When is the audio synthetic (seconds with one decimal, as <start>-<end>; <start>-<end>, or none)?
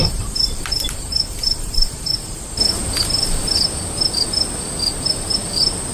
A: 0.0-2.1